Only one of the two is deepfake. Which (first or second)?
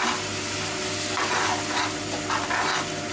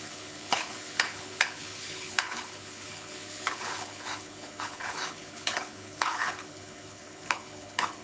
second